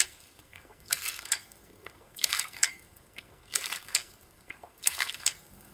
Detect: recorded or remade remade